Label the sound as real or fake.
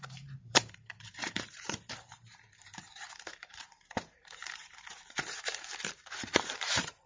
fake